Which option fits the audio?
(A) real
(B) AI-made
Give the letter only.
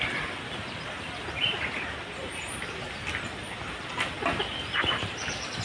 A